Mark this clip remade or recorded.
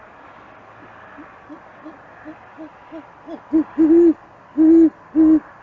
recorded